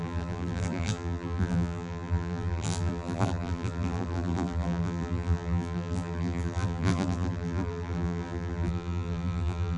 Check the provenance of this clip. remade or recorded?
remade